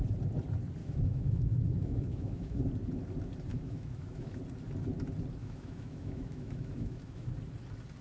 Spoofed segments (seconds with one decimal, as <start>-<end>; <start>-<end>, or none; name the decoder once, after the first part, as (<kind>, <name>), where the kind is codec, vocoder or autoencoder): 0.8-2.6 (autoencoder, DAC-VAE); 3.5-4.4; 5.4-7.3

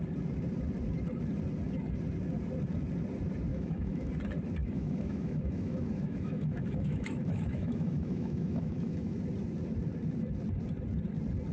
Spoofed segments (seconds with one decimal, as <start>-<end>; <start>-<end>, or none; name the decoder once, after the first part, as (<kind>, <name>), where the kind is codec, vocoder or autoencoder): 3.5-4.1 (autoencoder, DAC-VAE); 4.6-9.2

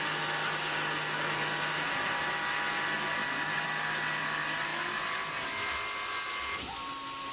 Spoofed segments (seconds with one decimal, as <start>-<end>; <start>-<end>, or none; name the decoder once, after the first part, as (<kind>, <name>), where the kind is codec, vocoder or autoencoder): none